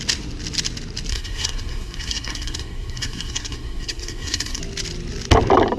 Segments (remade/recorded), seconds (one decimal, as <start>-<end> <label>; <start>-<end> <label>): 0.0-1.1 recorded; 1.1-4.6 remade; 4.6-5.8 recorded